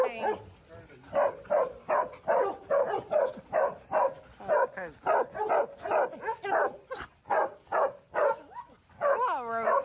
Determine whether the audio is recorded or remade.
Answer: recorded